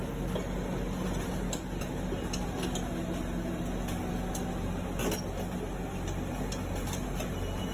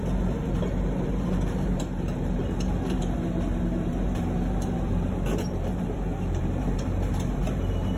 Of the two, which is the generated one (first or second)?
second